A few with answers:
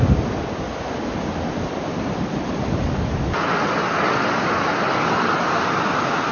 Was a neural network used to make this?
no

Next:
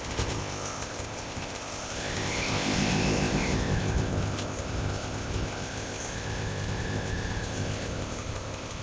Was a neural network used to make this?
yes